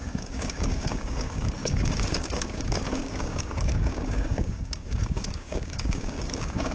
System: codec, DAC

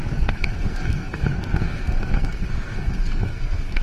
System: codec, SNAC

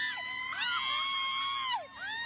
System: none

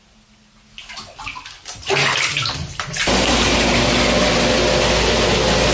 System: none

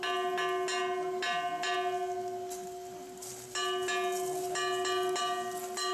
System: none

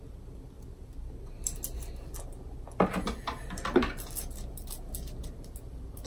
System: none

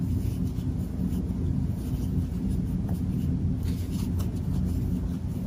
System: none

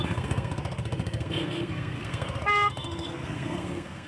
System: codec, SNAC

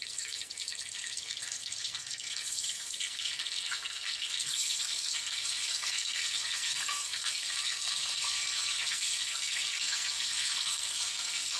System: codec, SNAC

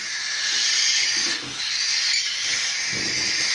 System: none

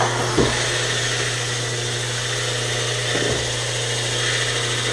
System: none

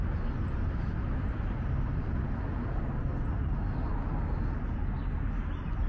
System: none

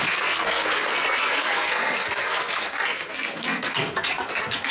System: codec, SNAC